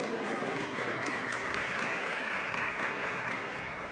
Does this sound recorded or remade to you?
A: remade